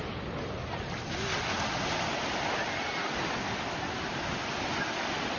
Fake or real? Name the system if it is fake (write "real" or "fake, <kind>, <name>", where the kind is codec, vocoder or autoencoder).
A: real